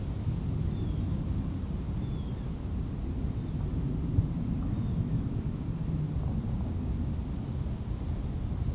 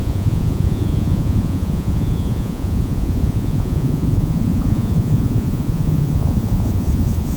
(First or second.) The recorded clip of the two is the first